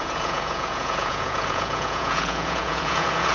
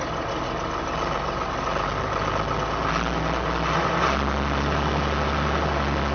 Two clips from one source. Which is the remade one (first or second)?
first